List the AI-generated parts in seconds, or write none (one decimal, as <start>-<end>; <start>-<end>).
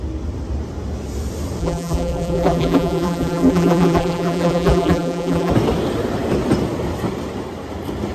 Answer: 1.6-5.5